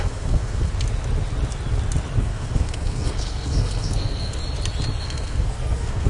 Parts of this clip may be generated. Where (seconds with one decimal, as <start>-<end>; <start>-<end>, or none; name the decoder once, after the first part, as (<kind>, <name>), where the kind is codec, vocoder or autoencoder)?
0.0-0.7 (codec, SNAC); 2.2-4.4; 5.0-6.1